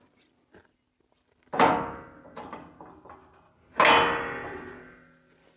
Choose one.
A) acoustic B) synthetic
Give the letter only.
A